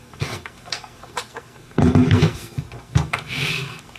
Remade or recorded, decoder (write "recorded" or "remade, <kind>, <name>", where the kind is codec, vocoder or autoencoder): remade, codec, SNAC